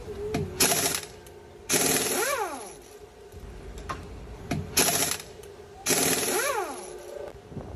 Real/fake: real